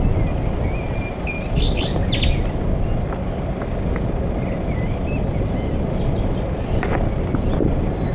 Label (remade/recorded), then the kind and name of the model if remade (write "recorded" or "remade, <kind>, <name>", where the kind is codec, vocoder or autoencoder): recorded